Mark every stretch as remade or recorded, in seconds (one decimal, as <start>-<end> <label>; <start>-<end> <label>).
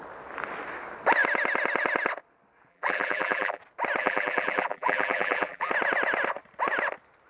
0.0-2.7 recorded; 2.7-3.6 remade; 3.6-4.0 recorded; 4.0-5.7 remade; 5.7-7.3 recorded